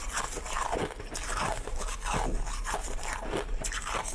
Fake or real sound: real